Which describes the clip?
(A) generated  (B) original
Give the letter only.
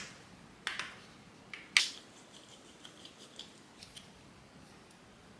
B